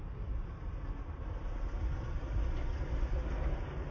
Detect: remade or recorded recorded